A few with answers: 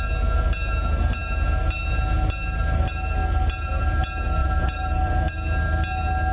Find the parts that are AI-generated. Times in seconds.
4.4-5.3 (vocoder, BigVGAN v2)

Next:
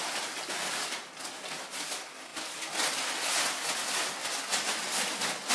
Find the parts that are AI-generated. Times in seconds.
none

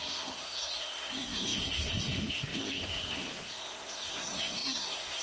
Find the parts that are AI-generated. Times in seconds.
0.0-5.2 (codec, SNAC)

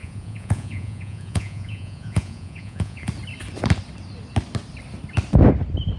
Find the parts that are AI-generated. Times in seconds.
0.0-3.1 (vocoder, Vocos)

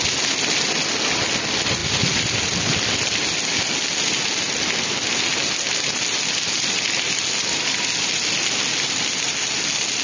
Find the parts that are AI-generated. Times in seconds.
none

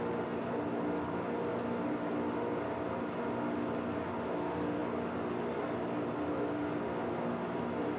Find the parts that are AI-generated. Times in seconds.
none

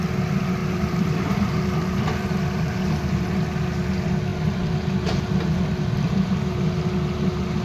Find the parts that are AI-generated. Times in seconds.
0.6-2.9 (vocoder, BigVGAN v2)

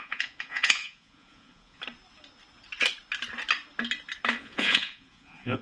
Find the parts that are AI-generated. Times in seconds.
0.0-1.8 (vocoder, Vocos); 4.4-5.6